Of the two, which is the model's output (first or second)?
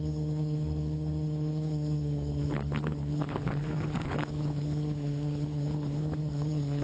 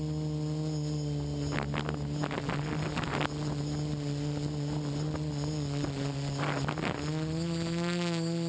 first